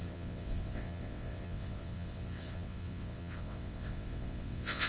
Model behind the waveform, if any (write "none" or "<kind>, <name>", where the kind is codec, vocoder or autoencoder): vocoder, WaveNeXt